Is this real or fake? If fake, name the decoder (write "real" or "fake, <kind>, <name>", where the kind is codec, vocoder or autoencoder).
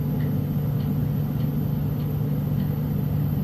real